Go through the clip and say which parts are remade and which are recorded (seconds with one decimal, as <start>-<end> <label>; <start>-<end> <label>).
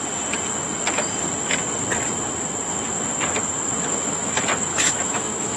0.0-4.7 recorded; 4.7-5.6 remade